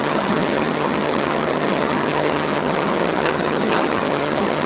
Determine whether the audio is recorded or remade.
remade